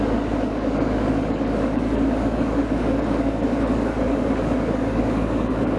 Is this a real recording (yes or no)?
no